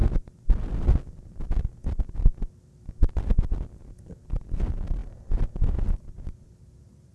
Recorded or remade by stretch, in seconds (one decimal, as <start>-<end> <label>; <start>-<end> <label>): 0.0-7.1 recorded